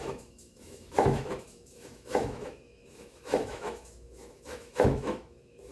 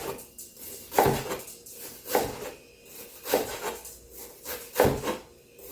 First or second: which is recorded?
second